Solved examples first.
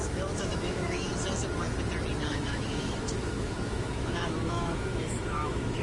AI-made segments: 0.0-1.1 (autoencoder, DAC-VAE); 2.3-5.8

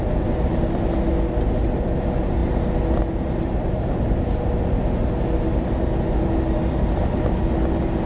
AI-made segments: none

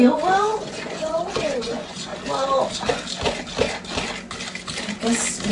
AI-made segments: 0.0-2.1 (vocoder, Vocos)

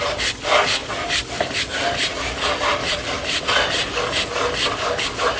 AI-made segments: 0.0-5.4 (vocoder, BigVGAN v2)

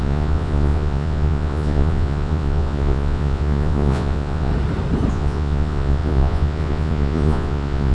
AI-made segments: 0.0-4.5 (vocoder, Vocos); 5.1-7.9